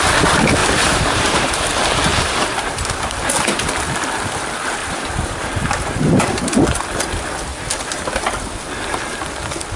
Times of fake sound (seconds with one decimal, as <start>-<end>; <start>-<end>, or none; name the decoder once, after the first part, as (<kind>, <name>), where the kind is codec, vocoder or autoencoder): 0.6-1.5 (vocoder, BigVGAN v2); 2.1-2.9; 4.8-6.4